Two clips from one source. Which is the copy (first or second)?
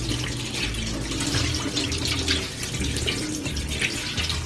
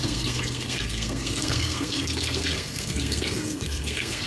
second